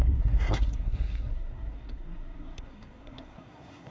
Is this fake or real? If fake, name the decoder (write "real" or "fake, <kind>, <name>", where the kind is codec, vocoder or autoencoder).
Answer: fake, codec, SNAC